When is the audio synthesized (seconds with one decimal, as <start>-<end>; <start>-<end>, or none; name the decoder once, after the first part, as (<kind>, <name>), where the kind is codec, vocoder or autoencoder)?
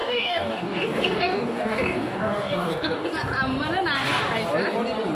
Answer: 0.0-3.1 (codec, DAC)